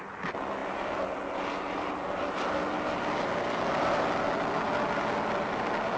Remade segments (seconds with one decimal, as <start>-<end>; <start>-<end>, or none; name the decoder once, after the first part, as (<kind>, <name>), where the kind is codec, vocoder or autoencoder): none